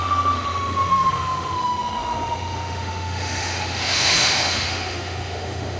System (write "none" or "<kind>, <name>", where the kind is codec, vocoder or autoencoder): autoencoder, DAC-VAE